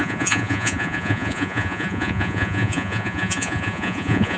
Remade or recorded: remade